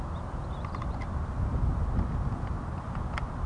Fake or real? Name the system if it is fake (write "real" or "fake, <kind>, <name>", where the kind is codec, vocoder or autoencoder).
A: real